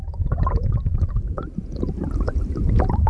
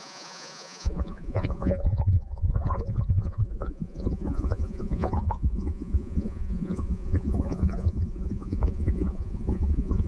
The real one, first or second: first